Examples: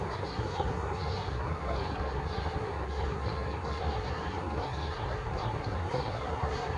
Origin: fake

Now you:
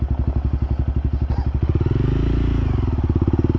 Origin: real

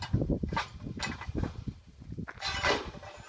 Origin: real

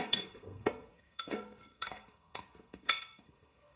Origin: fake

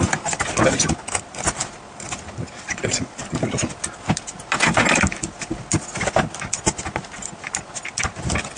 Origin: real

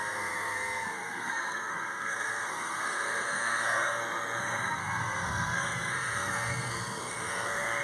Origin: fake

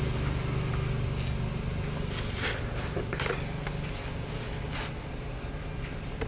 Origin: real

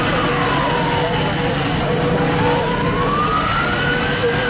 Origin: real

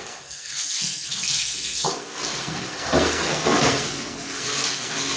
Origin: fake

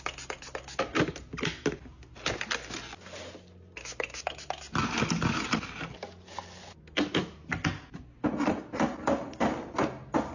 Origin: real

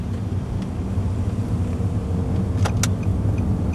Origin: real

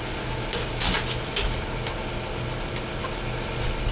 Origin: real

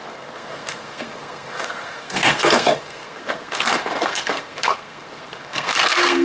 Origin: fake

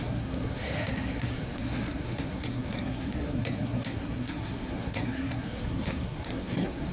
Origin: fake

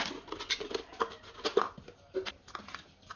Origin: real